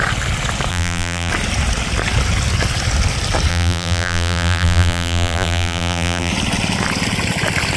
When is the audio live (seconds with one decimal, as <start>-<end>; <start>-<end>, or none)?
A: 0.0-0.7; 1.3-3.5; 6.3-7.8